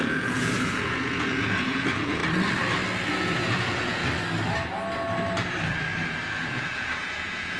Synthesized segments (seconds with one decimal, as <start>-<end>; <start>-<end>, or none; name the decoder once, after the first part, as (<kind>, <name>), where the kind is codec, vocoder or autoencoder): 0.0-2.2 (vocoder, Vocos); 3.1-4.0; 6.3-7.6